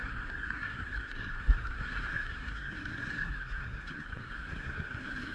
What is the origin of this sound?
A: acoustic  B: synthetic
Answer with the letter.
B